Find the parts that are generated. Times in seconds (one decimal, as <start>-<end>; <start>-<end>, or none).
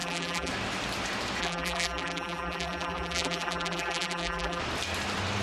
0.0-0.5; 1.4-4.6